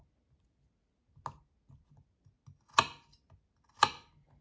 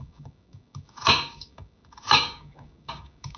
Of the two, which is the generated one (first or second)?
second